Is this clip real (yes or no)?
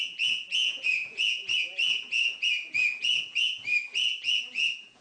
no